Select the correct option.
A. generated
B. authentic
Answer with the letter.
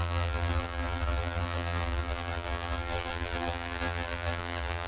A